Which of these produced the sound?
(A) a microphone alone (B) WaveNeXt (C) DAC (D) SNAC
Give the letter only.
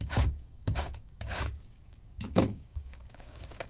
C